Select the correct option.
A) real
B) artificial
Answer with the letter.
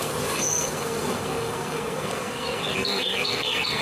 B